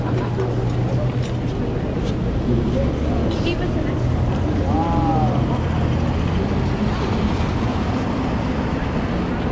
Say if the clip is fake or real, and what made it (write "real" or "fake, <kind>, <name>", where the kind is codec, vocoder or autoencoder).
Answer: real